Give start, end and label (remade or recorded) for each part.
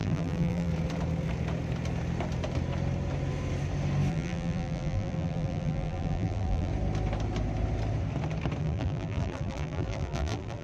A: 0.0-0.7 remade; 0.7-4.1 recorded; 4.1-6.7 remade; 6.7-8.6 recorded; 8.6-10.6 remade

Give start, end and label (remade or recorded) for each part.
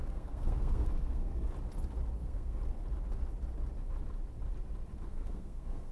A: 0.0-1.5 remade; 1.5-2.2 recorded; 2.2-2.6 remade; 2.6-5.1 recorded; 5.1-5.9 remade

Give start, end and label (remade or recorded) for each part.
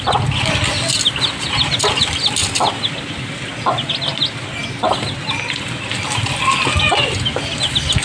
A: 0.0-8.0 recorded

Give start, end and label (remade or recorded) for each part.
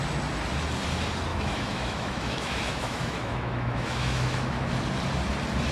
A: 0.0-1.3 recorded; 1.3-4.7 remade; 4.7-5.7 recorded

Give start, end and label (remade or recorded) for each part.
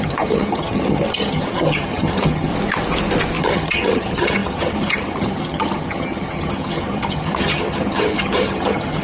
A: 0.0-2.5 remade; 2.5-3.4 recorded; 3.4-9.0 remade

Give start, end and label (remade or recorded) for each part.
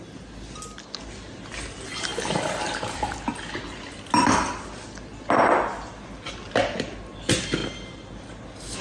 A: 0.0-8.8 recorded